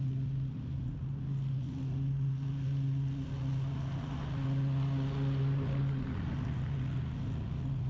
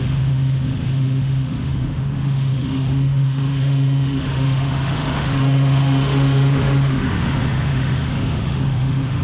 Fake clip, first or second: second